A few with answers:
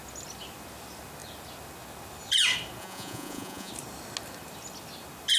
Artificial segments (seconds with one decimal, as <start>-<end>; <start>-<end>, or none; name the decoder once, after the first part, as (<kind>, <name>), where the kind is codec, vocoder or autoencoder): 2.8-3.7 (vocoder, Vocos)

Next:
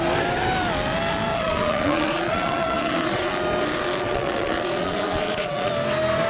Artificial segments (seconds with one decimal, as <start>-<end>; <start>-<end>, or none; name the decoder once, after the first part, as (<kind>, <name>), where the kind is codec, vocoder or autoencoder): 1.3-3.3 (vocoder, Vocos); 4.1-5.7

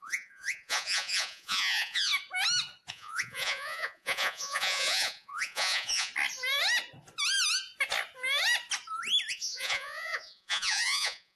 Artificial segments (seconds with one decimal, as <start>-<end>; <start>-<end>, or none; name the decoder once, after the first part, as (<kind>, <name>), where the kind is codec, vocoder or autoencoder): 0.0-2.1 (vocoder, Vocos); 2.9-6.1; 9.3-11.4

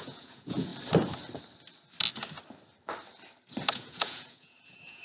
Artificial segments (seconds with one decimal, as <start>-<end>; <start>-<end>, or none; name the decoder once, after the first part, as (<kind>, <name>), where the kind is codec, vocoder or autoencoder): 0.0-0.7 (vocoder, Vocos); 3.7-5.0

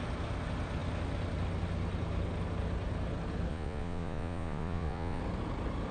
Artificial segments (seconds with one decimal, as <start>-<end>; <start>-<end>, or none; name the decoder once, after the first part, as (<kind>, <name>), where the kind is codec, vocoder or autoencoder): 3.5-5.2 (vocoder, Vocos)

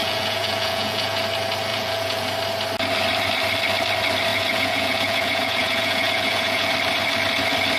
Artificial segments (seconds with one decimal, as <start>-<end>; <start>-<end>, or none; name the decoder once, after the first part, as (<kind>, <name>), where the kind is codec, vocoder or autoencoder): 0.0-1.2 (vocoder, Vocos); 1.7-2.3; 4.3-6.7

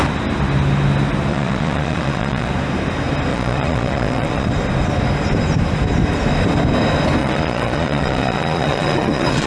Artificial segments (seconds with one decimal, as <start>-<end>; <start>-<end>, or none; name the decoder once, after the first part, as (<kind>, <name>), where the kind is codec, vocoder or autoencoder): 1.3-2.5 (vocoder, Vocos); 3.3-4.5; 7.2-9.5